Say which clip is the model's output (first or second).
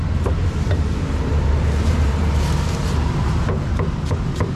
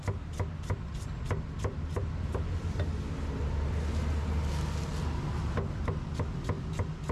first